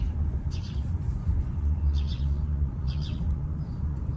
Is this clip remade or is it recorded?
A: remade